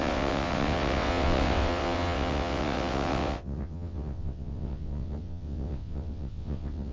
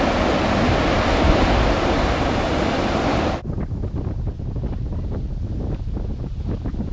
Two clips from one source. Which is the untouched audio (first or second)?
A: second